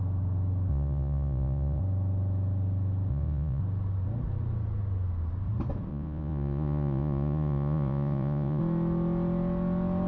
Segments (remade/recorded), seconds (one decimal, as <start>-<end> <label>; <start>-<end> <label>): 0.0-0.7 recorded; 0.7-1.8 remade; 1.8-3.1 recorded; 3.1-3.6 remade; 3.6-5.9 recorded; 5.9-8.6 remade; 8.6-10.1 recorded